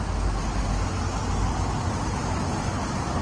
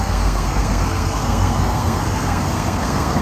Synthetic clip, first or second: second